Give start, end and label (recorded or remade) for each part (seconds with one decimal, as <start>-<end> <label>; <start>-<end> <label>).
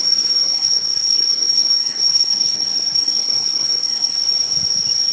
0.0-4.2 remade; 4.2-5.1 recorded